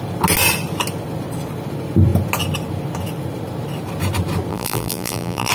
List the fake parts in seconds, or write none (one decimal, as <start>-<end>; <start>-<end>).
4.5-5.5